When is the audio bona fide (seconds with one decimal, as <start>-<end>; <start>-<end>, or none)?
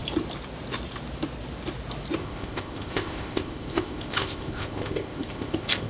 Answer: 0.0-2.2